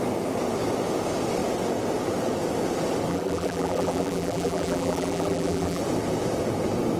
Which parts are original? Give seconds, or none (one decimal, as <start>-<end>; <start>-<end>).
0.0-3.1; 5.8-7.0